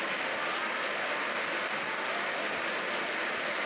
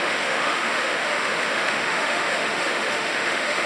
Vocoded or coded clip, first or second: second